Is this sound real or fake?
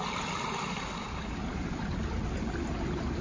real